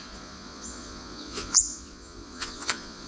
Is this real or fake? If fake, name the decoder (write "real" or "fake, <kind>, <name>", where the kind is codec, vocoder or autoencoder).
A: fake, vocoder, Vocos